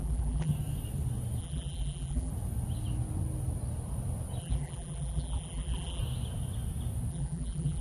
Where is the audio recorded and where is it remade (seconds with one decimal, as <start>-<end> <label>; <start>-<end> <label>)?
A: 0.0-0.5 remade; 0.5-1.4 recorded; 1.4-2.3 remade; 2.3-4.4 recorded; 4.4-6.0 remade; 6.0-7.1 recorded; 7.1-7.8 remade